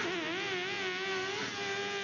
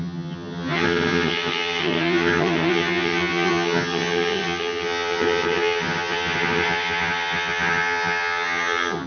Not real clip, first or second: second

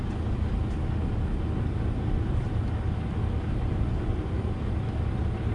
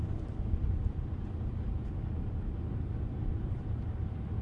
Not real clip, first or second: second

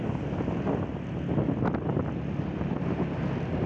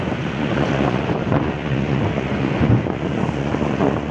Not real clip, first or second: second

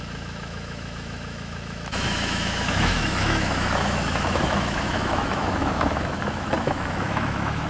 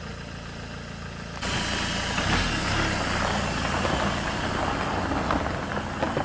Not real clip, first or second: first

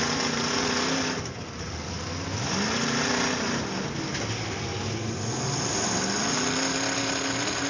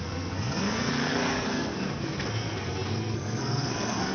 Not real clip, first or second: second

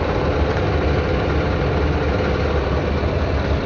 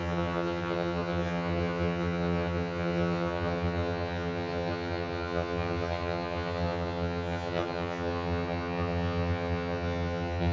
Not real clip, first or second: second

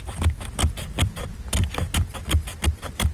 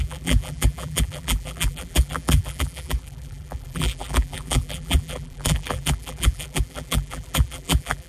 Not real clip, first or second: second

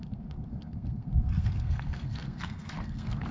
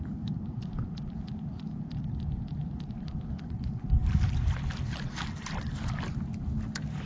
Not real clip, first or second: first